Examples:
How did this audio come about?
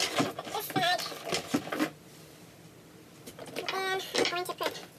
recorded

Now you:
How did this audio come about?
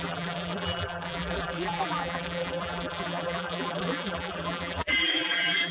remade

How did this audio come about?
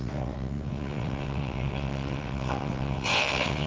remade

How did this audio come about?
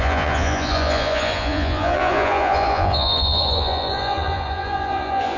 remade